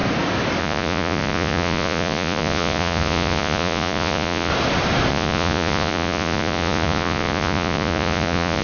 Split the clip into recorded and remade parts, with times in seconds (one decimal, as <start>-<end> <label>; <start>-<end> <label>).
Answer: 0.0-0.6 recorded; 0.6-4.5 remade; 4.5-5.1 recorded; 5.1-8.6 remade